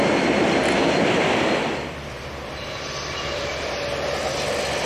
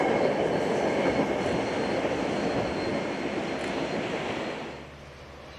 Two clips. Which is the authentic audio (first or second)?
second